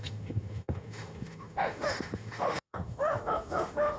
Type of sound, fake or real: fake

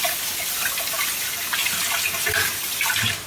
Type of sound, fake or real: real